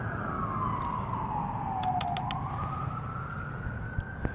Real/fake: real